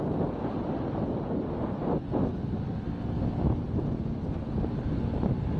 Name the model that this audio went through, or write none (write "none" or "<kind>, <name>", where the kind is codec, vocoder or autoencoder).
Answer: none